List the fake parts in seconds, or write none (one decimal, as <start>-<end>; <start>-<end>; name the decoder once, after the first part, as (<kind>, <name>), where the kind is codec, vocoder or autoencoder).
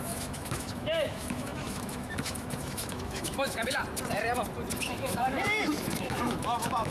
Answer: 0.0-3.8 (autoencoder, DAC-VAE); 4.7-6.9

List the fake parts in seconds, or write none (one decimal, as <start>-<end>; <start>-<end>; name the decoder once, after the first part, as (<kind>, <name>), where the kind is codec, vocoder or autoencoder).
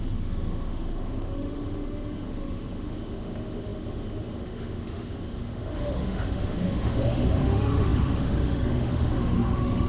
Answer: 0.0-9.9 (autoencoder, DAC-VAE)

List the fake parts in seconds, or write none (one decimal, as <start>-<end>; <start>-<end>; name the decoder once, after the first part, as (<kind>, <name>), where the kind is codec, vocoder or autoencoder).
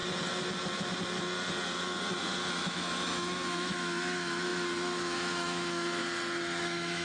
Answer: 2.5-6.0 (autoencoder, DAC-VAE); 6.6-7.0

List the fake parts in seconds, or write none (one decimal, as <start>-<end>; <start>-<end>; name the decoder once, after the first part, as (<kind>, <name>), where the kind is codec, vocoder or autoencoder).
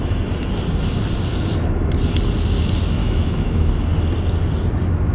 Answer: 3.0-3.7 (autoencoder, DAC-VAE)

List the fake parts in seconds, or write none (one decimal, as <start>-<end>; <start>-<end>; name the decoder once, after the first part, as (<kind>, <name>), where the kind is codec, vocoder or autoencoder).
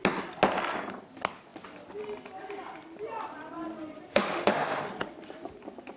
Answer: 4.1-4.9 (autoencoder, DAC-VAE)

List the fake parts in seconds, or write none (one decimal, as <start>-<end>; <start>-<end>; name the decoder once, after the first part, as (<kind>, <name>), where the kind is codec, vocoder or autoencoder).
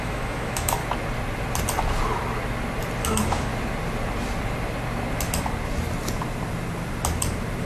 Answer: 0.0-0.8 (autoencoder, DAC-VAE); 3.0-3.5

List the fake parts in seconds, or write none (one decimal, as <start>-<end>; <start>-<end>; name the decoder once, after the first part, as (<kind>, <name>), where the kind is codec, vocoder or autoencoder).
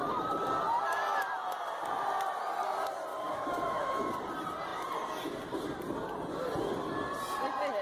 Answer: 3.1-4.0 (autoencoder, DAC-VAE)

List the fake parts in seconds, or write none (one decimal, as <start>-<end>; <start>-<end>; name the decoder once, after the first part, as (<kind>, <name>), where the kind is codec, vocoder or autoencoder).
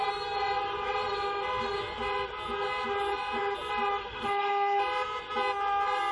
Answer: 4.0-4.8 (autoencoder, DAC-VAE)